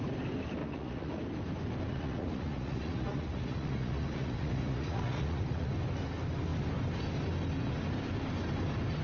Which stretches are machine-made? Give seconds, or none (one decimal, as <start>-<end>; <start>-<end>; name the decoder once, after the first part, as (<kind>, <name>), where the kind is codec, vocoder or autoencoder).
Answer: 0.6-1.2 (vocoder, Vocos); 1.9-5.7